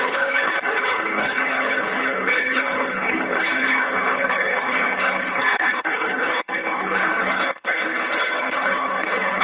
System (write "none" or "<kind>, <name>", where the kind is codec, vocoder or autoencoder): codec, HILCodec